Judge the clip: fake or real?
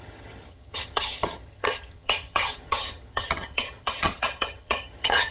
fake